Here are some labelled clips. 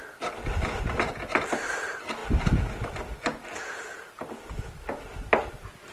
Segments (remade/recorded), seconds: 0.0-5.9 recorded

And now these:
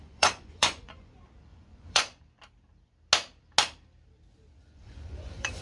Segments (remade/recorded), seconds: 0.0-1.1 remade; 1.1-1.5 recorded; 1.5-2.2 remade; 2.2-4.6 recorded; 4.6-5.6 remade

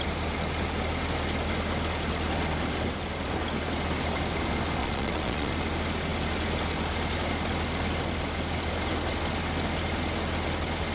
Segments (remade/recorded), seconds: 0.0-4.8 recorded; 4.8-5.5 remade; 5.5-10.9 recorded